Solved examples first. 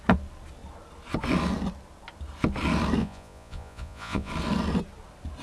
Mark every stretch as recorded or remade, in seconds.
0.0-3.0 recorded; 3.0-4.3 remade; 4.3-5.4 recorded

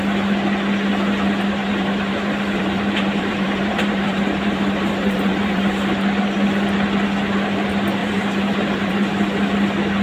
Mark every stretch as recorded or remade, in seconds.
0.0-1.6 recorded; 1.6-6.2 remade; 6.2-8.0 recorded; 8.0-8.9 remade; 8.9-10.0 recorded

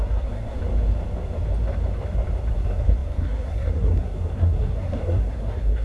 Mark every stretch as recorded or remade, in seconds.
0.0-0.6 remade; 0.6-2.5 recorded; 2.5-5.8 remade

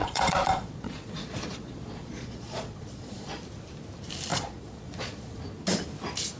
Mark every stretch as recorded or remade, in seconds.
0.0-3.4 remade; 3.4-4.3 recorded; 4.3-5.4 remade; 5.4-6.4 recorded

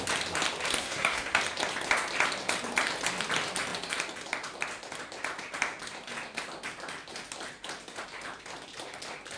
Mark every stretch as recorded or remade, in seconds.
0.0-0.8 recorded; 0.8-1.4 remade; 1.4-9.4 recorded

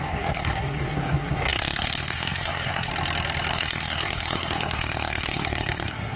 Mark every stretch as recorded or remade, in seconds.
0.0-2.9 remade; 2.9-3.5 recorded; 3.5-6.2 remade

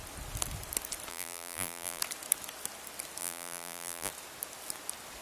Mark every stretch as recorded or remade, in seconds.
0.0-1.1 recorded; 1.1-2.0 remade; 2.0-3.2 recorded; 3.2-4.1 remade; 4.1-5.2 recorded